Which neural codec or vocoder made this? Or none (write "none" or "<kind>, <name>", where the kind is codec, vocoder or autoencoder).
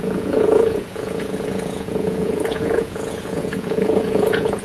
vocoder, Vocos